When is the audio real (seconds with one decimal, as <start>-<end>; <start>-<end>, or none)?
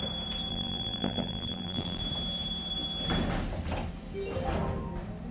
0.0-0.5; 2.0-5.3